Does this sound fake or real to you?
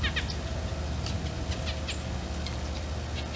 real